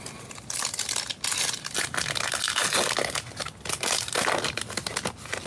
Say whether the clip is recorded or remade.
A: recorded